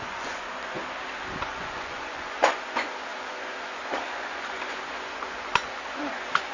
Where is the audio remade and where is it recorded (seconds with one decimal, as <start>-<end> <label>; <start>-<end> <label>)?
0.0-0.8 remade; 0.8-1.4 recorded; 1.4-6.5 remade